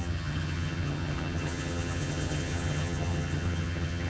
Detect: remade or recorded remade